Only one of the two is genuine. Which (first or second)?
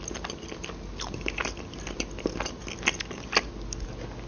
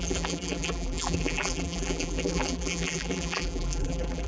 first